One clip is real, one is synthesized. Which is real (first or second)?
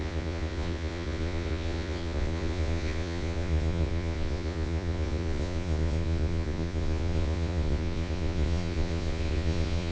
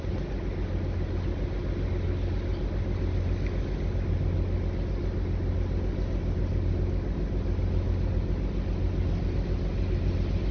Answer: second